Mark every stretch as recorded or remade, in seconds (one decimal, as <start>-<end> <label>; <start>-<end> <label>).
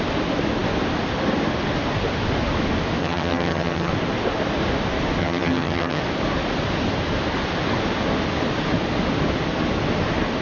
0.0-3.0 recorded; 3.0-3.9 remade; 3.9-5.2 recorded; 5.2-6.0 remade; 6.0-10.4 recorded